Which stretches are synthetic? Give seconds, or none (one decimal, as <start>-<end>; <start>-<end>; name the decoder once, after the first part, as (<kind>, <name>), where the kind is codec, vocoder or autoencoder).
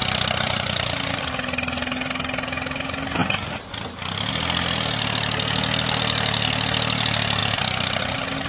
0.0-1.3 (vocoder, BigVGAN v2); 7.4-8.0